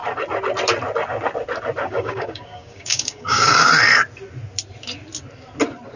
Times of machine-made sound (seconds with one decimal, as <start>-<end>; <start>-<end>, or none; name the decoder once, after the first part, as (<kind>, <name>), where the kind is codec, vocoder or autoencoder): 1.8-3.7 (codec, DAC)